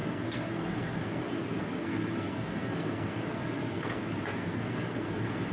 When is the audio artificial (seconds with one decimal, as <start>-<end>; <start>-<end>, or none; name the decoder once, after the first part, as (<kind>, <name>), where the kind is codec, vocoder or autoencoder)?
0.0-5.5 (codec, SNAC)